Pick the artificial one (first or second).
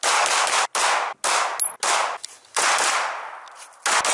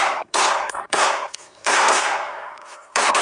second